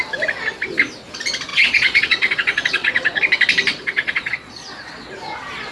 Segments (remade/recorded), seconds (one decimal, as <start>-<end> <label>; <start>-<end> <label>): 0.0-1.5 recorded; 1.5-3.2 remade; 3.2-3.7 recorded; 3.7-5.1 remade; 5.1-5.7 recorded